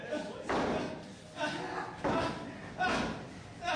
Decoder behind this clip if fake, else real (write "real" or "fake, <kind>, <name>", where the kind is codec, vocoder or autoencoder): real